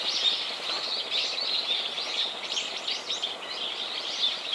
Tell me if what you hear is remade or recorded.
recorded